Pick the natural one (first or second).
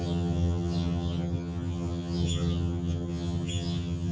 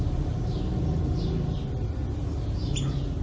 second